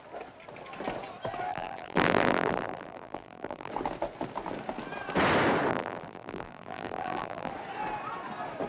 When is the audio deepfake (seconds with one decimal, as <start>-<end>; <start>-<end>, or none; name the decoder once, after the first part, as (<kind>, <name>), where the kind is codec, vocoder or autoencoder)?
1.5-3.7 (vocoder, BigVGAN v2); 5.7-7.5